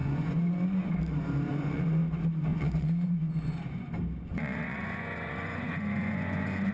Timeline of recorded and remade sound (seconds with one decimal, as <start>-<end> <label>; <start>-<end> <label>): 0.0-0.9 remade; 0.9-1.5 recorded; 1.5-2.0 remade; 2.0-2.5 recorded; 2.5-3.9 remade; 3.9-4.3 recorded; 4.3-6.7 remade